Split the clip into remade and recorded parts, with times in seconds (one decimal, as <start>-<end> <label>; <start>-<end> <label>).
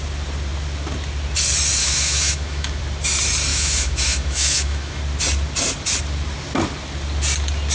0.0-1.8 recorded; 1.8-2.8 remade; 2.8-3.5 recorded; 3.5-5.0 remade; 5.0-7.7 recorded